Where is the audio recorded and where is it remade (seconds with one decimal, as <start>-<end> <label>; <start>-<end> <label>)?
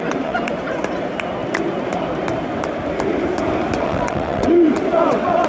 0.0-0.5 remade; 0.5-3.8 recorded; 3.8-5.5 remade